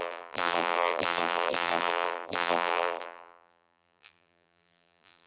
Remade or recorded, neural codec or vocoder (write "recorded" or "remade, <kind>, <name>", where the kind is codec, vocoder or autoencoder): remade, vocoder, BigVGAN v2